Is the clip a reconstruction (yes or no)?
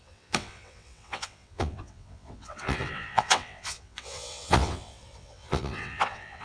yes